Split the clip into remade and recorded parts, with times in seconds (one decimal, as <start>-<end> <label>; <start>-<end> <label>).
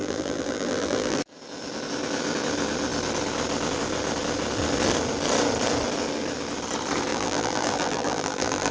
0.0-1.2 remade; 1.2-7.1 recorded; 7.1-8.7 remade